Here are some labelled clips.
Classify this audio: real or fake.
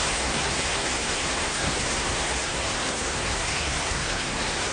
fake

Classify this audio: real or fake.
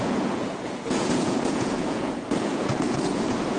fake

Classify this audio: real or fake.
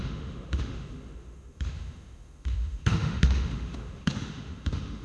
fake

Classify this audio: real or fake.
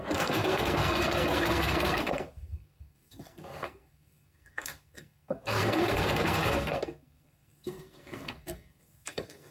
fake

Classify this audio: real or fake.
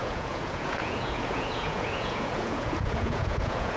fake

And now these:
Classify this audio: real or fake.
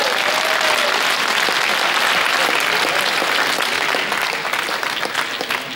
real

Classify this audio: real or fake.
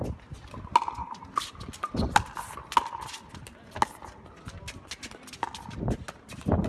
real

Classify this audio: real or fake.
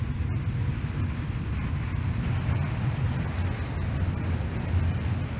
real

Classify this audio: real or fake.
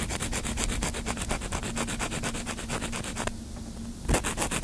real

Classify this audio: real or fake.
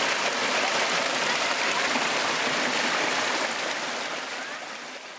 real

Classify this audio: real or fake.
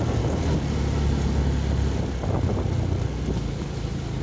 real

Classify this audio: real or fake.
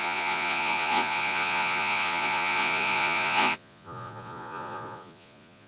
fake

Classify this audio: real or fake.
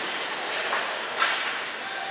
real